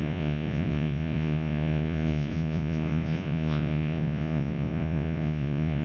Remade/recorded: remade